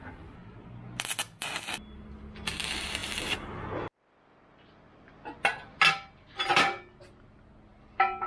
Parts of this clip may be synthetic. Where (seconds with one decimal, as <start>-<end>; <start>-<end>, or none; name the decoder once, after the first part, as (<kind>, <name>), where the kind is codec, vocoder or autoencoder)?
none